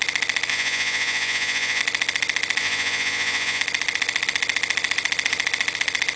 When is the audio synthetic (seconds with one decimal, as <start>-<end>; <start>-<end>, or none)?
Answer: 0.5-1.8; 2.6-3.6